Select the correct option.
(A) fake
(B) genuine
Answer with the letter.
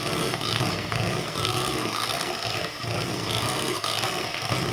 A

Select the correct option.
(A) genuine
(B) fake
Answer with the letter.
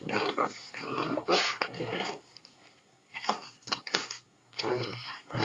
B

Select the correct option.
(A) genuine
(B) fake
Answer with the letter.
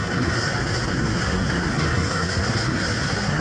B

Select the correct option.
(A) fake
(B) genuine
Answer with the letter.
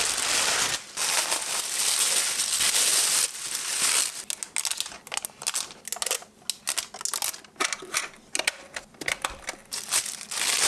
B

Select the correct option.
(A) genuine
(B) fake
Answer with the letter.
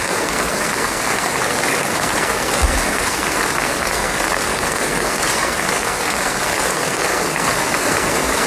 B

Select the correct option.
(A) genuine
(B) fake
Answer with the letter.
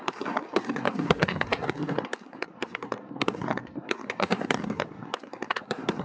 B